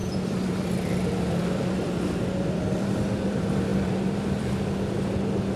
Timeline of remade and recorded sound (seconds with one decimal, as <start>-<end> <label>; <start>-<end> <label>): 0.0-3.3 remade; 3.3-3.7 recorded; 3.7-4.5 remade; 4.5-5.6 recorded